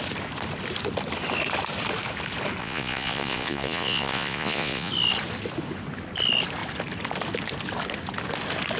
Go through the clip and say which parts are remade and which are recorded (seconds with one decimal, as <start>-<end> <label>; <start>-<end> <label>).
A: 0.0-2.6 recorded; 2.6-4.9 remade; 4.9-8.8 recorded